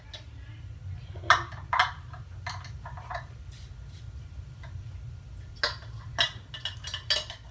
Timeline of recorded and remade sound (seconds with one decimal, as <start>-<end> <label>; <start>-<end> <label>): 0.0-7.5 recorded